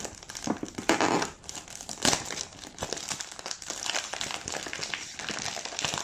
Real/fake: fake